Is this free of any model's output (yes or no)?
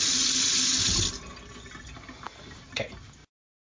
yes